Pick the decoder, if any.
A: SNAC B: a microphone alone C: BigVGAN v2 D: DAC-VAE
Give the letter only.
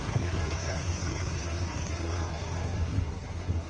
A